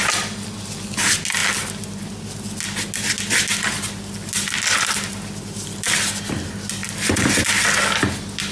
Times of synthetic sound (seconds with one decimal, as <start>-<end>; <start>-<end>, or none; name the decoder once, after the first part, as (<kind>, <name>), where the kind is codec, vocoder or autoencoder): 6.8-7.6 (vocoder, BigVGAN v2)